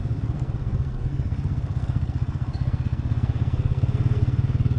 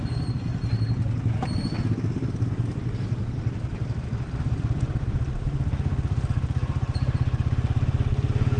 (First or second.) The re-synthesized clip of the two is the first